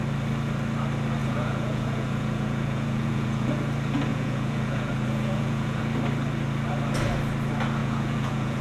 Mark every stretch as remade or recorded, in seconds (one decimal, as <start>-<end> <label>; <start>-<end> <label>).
0.0-1.2 recorded; 1.2-3.5 remade; 3.5-4.1 recorded; 4.1-5.8 remade; 5.8-7.8 recorded; 7.8-8.6 remade